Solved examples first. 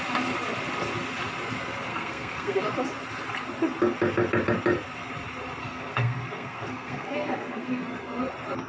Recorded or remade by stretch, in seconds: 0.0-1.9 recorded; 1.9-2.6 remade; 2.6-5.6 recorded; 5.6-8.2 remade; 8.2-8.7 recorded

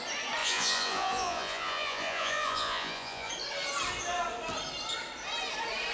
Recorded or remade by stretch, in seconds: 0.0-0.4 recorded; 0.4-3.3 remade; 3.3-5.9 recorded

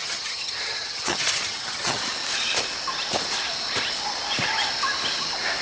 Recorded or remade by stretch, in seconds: 0.0-2.0 remade; 2.0-5.6 recorded

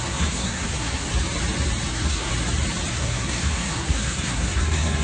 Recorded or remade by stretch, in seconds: 0.0-1.1 remade; 1.1-1.9 recorded; 1.9-2.3 remade; 2.3-2.9 recorded; 2.9-5.0 remade

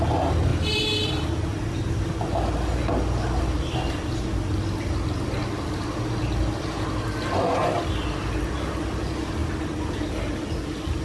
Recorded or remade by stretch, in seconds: 0.0-11.0 recorded

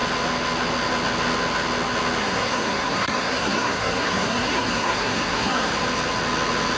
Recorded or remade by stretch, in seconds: 0.0-2.2 recorded; 2.2-5.7 remade; 5.7-6.8 recorded

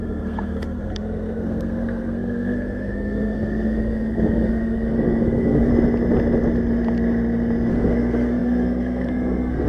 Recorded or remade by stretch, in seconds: 0.0-5.7 remade; 5.7-7.7 recorded; 7.7-9.7 remade